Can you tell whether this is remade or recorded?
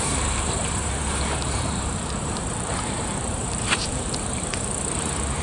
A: remade